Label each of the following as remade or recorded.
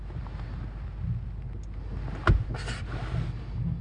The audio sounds recorded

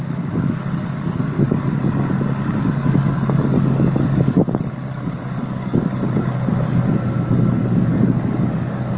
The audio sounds remade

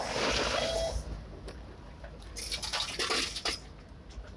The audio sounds recorded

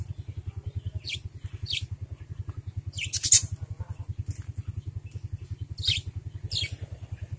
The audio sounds recorded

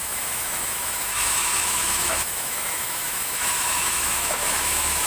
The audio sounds remade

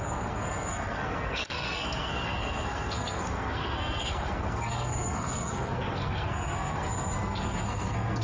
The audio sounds remade